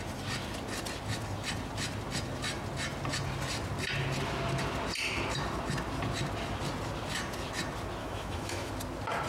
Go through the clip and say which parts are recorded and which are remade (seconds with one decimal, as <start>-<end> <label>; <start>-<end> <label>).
0.0-8.0 recorded; 8.0-8.7 remade; 8.7-9.3 recorded

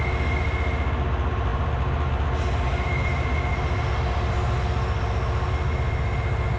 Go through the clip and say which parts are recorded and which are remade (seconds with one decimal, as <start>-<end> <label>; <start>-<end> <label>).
0.0-6.6 recorded

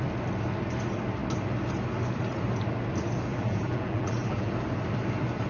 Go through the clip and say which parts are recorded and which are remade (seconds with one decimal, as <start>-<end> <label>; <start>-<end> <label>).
0.0-3.3 recorded; 3.3-4.5 remade; 4.5-5.5 recorded

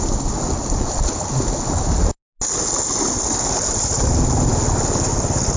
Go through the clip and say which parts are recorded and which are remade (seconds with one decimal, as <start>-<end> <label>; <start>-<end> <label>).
0.0-5.6 recorded

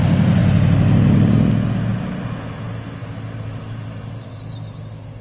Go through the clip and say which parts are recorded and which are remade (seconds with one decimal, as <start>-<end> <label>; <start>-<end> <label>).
0.0-5.2 recorded

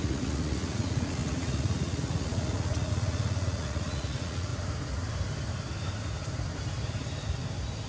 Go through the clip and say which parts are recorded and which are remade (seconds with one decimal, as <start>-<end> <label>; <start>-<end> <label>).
0.0-4.5 remade; 4.5-7.9 recorded

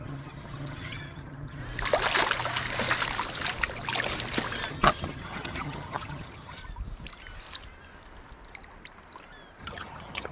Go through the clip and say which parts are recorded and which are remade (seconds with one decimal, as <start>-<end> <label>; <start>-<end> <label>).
0.0-1.6 remade; 1.6-4.7 recorded; 4.7-6.6 remade; 6.6-9.6 recorded; 9.6-10.3 remade